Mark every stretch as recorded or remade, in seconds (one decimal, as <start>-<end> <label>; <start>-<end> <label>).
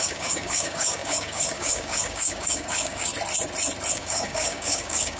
0.0-3.1 remade; 3.1-3.9 recorded; 3.9-5.2 remade